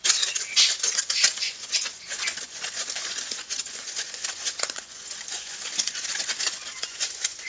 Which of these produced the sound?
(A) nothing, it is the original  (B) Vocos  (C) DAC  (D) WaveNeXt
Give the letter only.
B